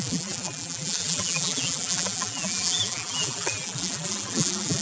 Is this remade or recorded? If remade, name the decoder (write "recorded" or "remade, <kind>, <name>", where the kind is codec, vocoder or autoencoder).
remade, vocoder, BigVGAN v2